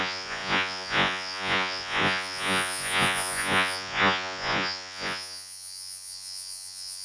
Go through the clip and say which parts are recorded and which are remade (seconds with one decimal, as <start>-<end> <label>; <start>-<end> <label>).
0.0-7.0 remade